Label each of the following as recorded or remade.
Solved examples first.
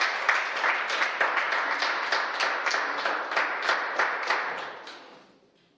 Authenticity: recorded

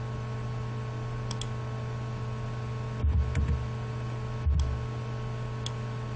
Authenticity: recorded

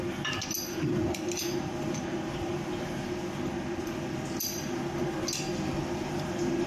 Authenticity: recorded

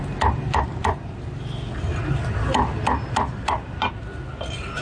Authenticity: recorded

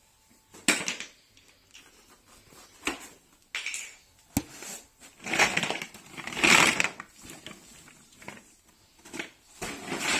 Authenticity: recorded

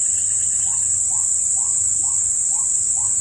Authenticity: recorded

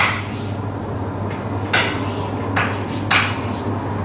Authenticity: recorded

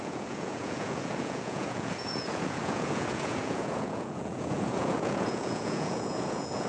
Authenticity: remade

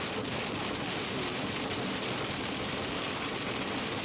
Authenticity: recorded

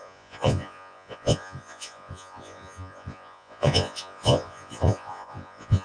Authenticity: remade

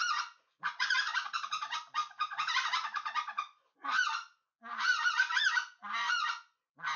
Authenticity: remade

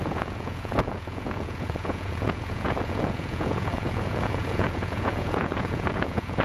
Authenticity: remade